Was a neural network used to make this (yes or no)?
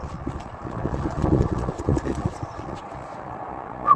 yes